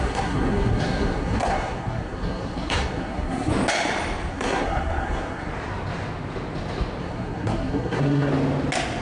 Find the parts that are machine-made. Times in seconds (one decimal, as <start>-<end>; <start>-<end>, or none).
0.0-3.5; 4.3-5.5; 7.0-8.3